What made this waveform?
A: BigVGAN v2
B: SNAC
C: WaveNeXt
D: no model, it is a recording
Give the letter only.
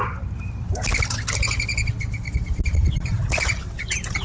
D